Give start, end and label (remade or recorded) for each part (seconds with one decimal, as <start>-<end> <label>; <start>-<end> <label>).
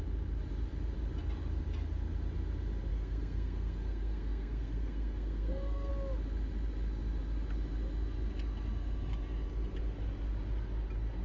0.0-2.9 recorded; 2.9-5.9 remade; 5.9-11.2 recorded